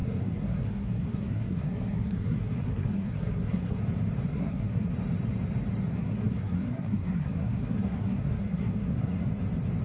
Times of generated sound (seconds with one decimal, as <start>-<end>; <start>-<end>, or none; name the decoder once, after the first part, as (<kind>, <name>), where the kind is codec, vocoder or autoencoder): 0.0-3.8 (codec, SNAC); 4.3-4.9; 5.9-9.3